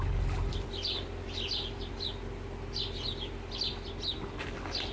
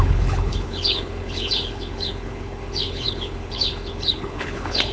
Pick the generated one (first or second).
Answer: second